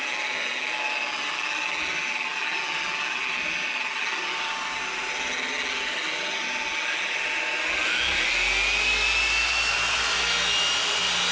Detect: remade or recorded recorded